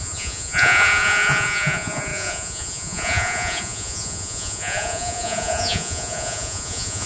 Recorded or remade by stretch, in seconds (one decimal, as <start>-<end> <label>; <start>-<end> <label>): 0.0-7.1 remade